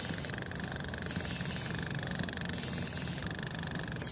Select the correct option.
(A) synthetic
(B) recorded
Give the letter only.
B